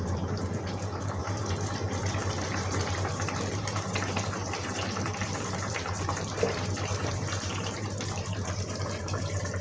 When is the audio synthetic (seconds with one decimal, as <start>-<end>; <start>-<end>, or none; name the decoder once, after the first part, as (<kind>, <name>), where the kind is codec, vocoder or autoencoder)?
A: 0.0-9.6 (vocoder, BigVGAN v2)